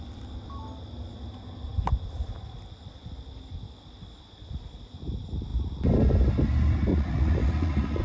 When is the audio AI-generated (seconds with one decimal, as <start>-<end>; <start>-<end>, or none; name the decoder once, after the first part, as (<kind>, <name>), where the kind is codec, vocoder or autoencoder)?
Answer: 6.9-8.0 (vocoder, Vocos)